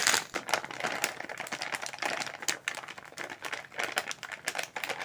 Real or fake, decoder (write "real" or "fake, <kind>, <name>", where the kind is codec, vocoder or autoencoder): real